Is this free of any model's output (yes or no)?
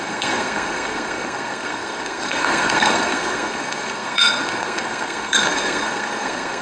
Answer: no